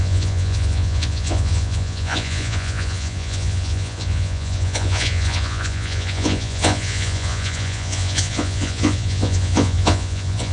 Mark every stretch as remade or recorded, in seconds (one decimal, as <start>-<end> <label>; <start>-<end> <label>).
0.0-10.5 remade